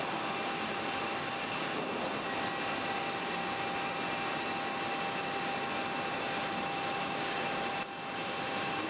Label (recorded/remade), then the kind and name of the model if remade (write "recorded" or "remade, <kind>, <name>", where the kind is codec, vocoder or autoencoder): recorded